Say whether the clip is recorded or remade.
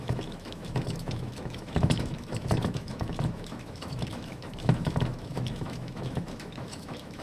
remade